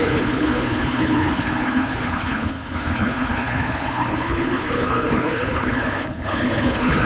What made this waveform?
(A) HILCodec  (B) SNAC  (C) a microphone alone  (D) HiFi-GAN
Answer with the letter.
A